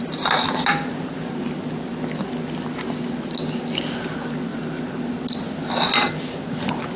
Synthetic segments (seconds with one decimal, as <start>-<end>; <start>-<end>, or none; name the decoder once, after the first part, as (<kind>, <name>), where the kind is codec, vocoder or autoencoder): none